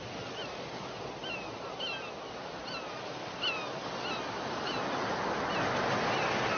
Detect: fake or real real